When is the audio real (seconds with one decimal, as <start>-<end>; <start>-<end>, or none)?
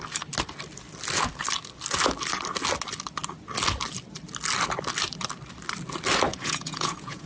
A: 0.0-6.3